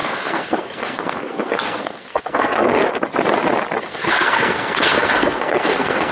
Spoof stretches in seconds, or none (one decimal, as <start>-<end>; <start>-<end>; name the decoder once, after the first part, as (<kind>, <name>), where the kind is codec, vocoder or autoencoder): 0.0-2.8 (codec, SNAC); 3.8-6.1